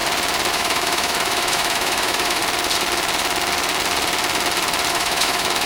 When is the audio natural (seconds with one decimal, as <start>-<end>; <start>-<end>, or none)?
0.0-0.5; 2.4-4.9